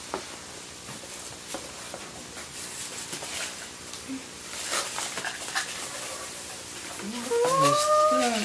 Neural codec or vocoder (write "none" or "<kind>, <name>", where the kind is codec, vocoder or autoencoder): none